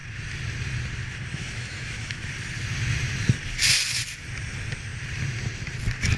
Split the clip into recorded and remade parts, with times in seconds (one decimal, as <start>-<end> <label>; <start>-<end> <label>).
0.0-1.3 recorded; 1.3-2.3 remade; 2.3-6.2 recorded

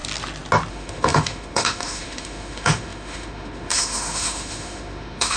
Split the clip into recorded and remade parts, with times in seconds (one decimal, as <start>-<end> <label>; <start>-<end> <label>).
0.0-0.7 recorded; 0.7-5.4 remade

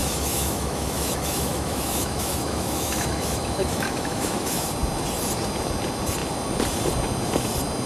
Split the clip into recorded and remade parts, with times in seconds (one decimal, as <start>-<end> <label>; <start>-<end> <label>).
0.0-4.7 remade; 4.7-7.9 recorded

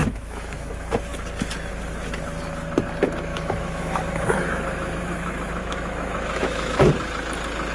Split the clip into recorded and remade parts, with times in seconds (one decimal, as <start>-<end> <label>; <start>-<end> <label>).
0.0-0.7 remade; 0.7-3.3 recorded; 3.3-6.9 remade; 6.9-7.7 recorded